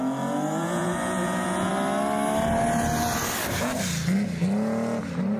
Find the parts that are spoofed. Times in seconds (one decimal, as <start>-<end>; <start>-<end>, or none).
0.6-1.7

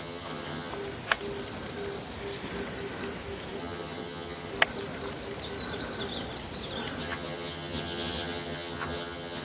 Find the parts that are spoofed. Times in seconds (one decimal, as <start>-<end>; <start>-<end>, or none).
0.0-0.7; 3.6-4.5; 7.0-9.4

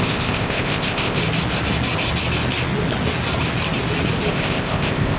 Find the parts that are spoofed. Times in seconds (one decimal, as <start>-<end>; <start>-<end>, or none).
0.0-1.2; 4.3-5.2